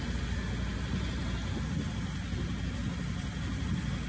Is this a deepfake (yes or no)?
no